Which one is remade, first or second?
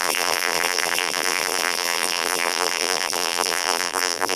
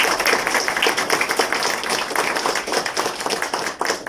first